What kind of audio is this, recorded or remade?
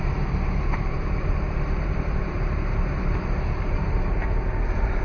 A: remade